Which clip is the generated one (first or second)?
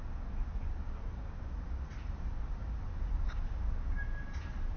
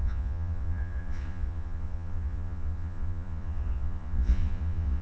second